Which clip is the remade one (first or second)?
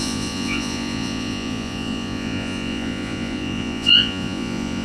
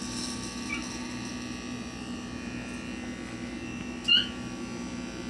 first